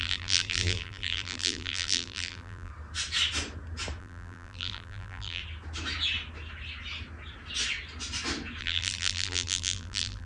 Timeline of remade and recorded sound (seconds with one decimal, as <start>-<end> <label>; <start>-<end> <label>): 0.0-2.7 remade; 2.7-4.0 recorded; 4.0-5.4 remade; 5.4-8.6 recorded; 8.6-10.3 remade